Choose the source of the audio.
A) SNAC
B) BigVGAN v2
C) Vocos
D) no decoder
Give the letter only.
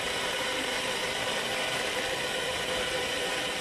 B